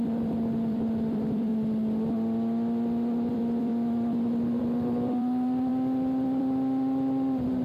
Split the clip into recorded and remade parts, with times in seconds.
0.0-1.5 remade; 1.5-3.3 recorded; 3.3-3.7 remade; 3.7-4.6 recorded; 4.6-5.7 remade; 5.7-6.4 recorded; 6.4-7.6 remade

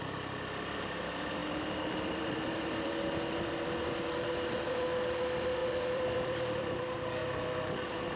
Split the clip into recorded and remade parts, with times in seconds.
0.0-1.4 recorded; 1.4-3.5 remade; 3.5-5.6 recorded; 5.6-6.8 remade; 6.8-8.2 recorded